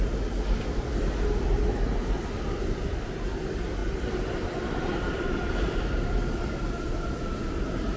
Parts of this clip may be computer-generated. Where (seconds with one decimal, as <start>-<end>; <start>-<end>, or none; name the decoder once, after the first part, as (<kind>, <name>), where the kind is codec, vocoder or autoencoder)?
3.8-5.4 (vocoder, BigVGAN v2)